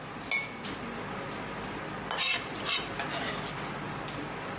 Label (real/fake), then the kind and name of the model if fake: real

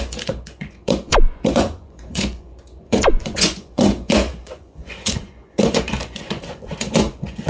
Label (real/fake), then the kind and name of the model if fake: fake, vocoder, Vocos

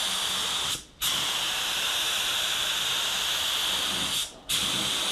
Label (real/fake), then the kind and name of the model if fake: real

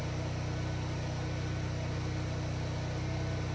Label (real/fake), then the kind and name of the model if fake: real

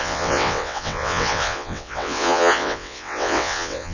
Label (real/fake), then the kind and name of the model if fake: fake, vocoder, WaveNeXt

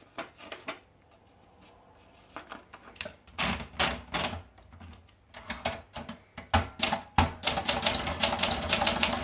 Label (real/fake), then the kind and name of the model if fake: real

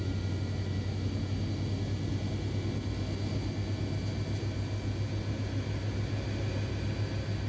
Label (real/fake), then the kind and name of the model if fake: real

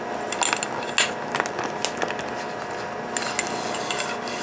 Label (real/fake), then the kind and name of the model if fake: real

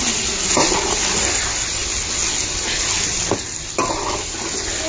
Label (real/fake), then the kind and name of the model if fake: real